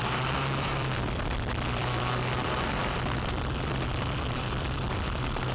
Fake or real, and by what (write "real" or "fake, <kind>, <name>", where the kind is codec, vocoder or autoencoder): fake, vocoder, BigVGAN v2